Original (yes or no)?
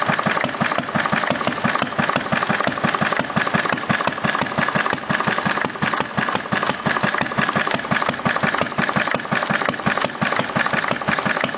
yes